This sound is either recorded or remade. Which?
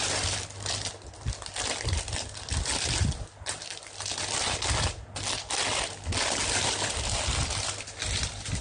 recorded